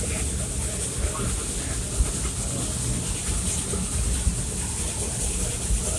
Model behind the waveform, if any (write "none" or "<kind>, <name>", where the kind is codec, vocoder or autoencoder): none